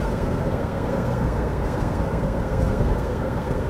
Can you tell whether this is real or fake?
fake